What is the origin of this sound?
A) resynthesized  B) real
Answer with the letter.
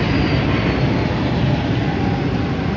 B